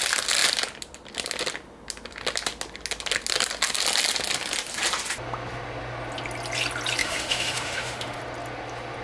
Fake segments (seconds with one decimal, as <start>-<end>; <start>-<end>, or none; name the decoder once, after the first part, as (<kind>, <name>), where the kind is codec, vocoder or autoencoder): 7.0-8.2 (autoencoder, DAC-VAE)